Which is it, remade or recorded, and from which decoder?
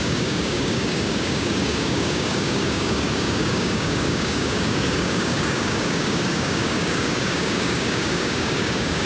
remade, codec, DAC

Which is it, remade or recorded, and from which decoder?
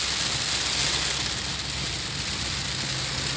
recorded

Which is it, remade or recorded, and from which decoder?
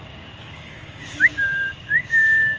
remade, codec, DAC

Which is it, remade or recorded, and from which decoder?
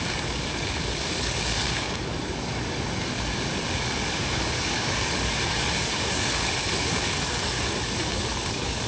remade, codec, DAC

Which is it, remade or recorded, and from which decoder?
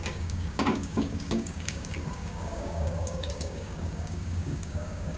remade, codec, DAC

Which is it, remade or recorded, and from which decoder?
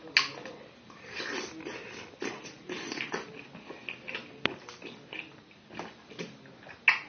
recorded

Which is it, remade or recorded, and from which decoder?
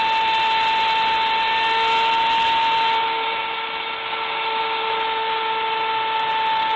recorded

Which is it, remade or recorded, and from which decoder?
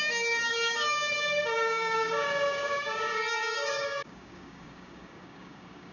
remade, codec, DAC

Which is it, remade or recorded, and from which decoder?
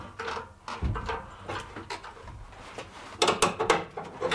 recorded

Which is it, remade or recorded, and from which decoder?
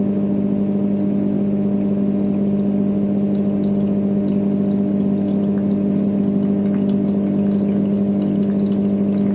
recorded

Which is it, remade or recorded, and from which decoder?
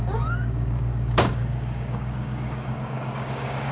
remade, codec, DAC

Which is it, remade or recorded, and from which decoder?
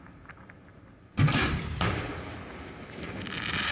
recorded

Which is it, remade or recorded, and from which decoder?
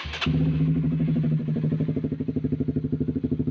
recorded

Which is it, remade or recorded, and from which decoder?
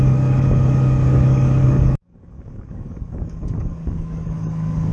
remade, codec, DAC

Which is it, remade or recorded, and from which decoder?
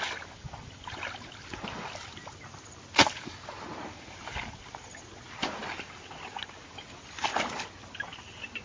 recorded